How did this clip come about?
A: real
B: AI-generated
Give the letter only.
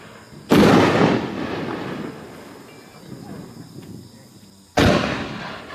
A